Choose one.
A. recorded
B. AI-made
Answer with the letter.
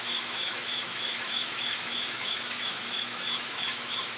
B